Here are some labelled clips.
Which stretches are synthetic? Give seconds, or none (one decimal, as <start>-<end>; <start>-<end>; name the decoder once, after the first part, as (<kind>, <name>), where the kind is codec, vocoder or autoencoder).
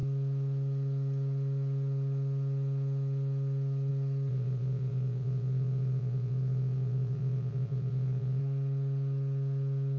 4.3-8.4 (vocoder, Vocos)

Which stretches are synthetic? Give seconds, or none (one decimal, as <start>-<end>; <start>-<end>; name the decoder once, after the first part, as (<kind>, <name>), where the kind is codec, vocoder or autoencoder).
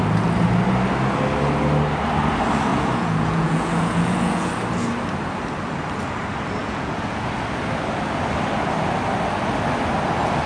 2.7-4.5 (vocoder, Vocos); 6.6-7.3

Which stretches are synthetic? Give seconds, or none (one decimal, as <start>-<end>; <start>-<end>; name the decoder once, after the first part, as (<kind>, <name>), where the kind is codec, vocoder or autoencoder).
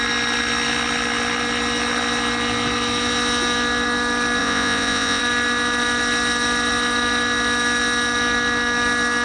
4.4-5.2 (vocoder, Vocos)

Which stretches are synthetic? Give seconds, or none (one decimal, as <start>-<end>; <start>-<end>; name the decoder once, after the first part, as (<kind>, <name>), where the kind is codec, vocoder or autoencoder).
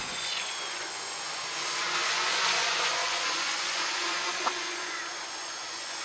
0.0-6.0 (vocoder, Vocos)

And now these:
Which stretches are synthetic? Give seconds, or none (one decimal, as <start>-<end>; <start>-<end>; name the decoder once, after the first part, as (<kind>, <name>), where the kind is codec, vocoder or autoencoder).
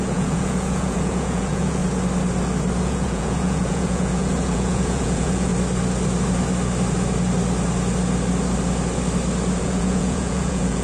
0.0-1.8 (vocoder, Vocos); 2.8-5.5; 9.6-10.8